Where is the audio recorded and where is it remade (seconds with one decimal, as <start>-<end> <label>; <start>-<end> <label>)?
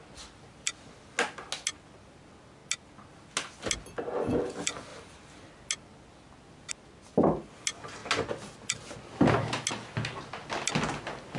0.0-11.4 recorded